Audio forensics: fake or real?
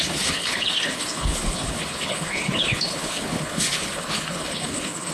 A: fake